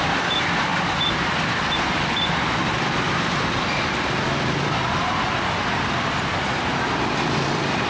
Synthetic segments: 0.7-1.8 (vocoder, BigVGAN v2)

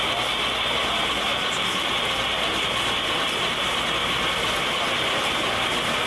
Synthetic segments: 1.3-1.9 (vocoder, BigVGAN v2); 4.0-4.7

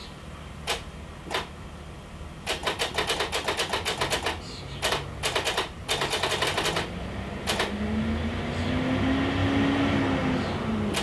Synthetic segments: 0.0-1.0 (vocoder, BigVGAN v2); 9.4-10.0

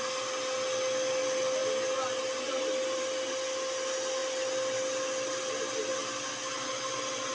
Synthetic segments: none